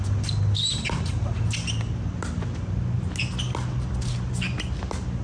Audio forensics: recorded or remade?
recorded